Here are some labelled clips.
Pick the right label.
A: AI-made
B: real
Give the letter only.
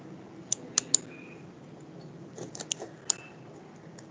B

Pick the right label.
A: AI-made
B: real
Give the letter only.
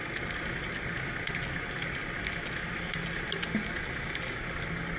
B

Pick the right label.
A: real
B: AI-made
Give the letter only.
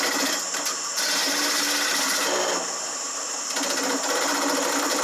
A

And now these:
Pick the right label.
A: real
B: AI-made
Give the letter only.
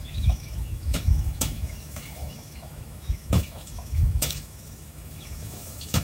B